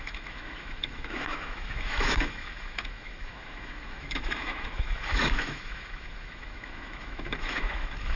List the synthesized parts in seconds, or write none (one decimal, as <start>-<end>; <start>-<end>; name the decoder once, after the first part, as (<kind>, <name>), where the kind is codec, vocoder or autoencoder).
0.0-8.2 (autoencoder, DAC-VAE)

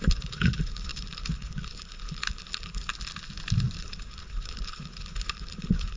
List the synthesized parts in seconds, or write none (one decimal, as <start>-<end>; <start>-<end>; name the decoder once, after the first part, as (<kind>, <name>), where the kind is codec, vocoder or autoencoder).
0.0-2.9 (codec, HILCodec); 3.8-6.0

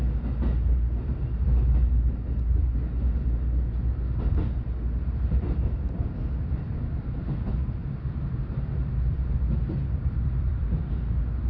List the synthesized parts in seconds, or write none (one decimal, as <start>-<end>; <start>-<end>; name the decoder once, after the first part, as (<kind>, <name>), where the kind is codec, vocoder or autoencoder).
7.8-10.7 (vocoder, BigVGAN v2)

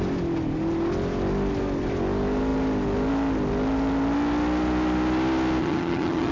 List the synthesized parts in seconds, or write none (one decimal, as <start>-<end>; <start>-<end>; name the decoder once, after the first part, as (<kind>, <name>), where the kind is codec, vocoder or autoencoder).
5.6-6.3 (vocoder, HiFi-GAN)